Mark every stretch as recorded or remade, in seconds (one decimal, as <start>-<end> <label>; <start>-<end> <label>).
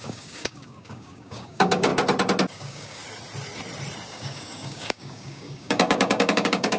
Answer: 0.0-1.9 remade; 1.9-2.5 recorded; 2.5-3.0 remade; 3.0-4.1 recorded; 4.1-6.8 remade